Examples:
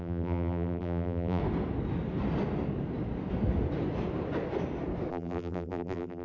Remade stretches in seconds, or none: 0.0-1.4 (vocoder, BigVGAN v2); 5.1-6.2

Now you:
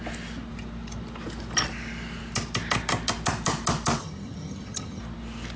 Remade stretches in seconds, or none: 4.0-5.0 (vocoder, HiFi-GAN)